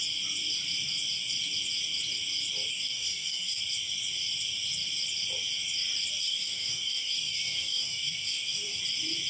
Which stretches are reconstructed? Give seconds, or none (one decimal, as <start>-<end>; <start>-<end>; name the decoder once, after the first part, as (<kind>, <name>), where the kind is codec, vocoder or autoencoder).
2.7-3.6 (codec, DAC); 6.2-8.8